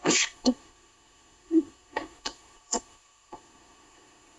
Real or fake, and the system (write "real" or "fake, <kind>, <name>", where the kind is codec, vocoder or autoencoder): fake, codec, SNAC